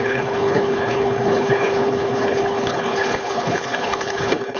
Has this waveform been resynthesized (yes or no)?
yes